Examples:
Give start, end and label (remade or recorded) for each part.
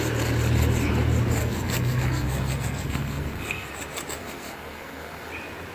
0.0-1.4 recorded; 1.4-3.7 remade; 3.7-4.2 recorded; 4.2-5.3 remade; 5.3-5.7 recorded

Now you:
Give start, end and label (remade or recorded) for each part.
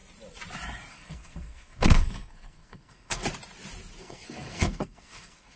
0.0-0.9 recorded; 0.9-3.2 remade; 3.2-4.0 recorded; 4.0-5.6 remade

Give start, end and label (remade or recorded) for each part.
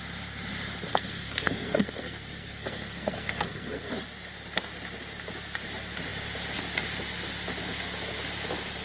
0.0-0.9 recorded; 0.9-3.9 remade; 3.9-8.8 recorded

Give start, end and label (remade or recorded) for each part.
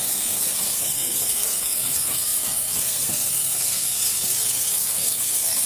0.0-5.7 remade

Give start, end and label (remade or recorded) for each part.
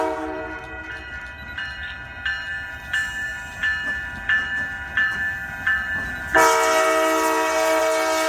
0.0-8.3 recorded